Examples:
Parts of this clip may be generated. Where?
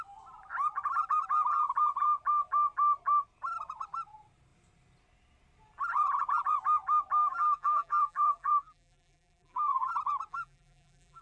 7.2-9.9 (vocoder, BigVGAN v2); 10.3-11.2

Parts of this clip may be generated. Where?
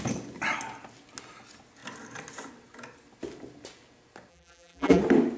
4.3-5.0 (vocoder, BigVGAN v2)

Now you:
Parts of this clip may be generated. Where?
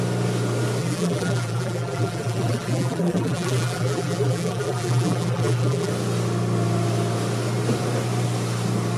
0.8-5.9 (vocoder, BigVGAN v2)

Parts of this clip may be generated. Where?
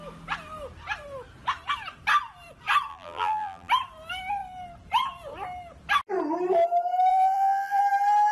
2.9-3.7 (vocoder, BigVGAN v2); 7.1-7.8